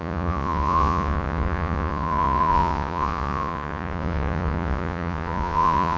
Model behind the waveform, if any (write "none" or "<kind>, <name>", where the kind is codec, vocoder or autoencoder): vocoder, Vocos